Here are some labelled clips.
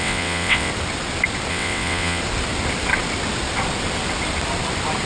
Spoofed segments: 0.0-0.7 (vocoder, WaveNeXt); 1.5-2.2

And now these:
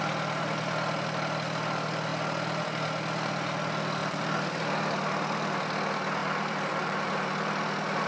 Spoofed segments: 4.0-4.6 (vocoder, BigVGAN v2); 6.2-7.3

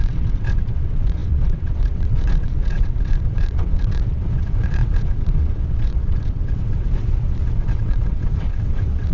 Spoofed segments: 0.0-9.1 (vocoder, WaveNeXt)

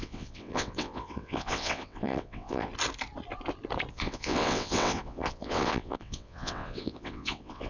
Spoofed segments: 0.0-2.7 (vocoder, WaveNeXt); 3.9-7.7

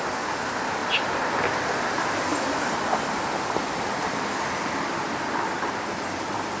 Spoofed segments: none

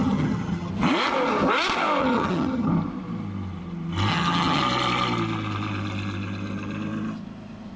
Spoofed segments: 0.0-0.7 (vocoder, HiFi-GAN); 2.0-2.7; 4.1-4.6